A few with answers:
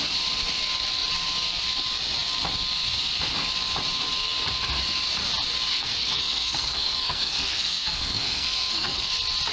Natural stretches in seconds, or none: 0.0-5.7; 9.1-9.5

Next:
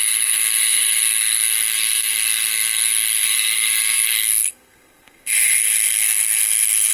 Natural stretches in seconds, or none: none

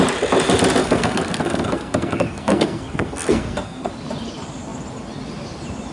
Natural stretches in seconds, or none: 0.0-0.8; 3.9-5.9

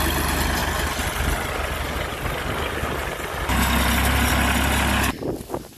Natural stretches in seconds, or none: 0.0-5.8

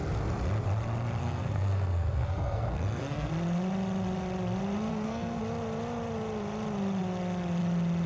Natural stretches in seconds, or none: 0.0-1.2; 3.3-4.9; 5.4-8.1

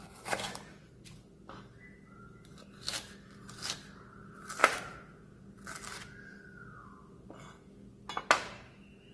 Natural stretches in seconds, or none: 0.0-9.1

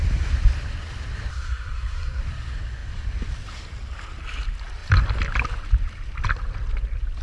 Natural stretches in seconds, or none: 0.0-1.3; 2.2-7.2

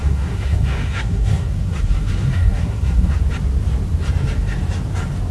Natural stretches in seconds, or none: 3.2-5.3